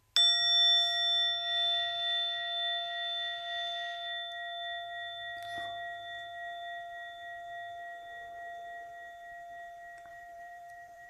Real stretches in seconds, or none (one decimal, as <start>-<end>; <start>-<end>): 0.0-10.1